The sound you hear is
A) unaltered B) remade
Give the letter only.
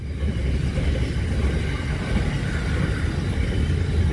A